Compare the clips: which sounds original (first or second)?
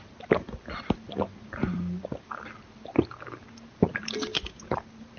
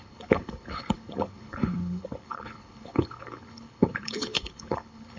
first